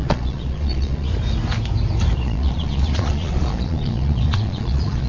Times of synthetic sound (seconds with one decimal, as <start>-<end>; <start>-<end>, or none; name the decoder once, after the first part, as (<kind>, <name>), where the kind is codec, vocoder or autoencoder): 0.0-1.1 (vocoder, Vocos); 2.2-5.1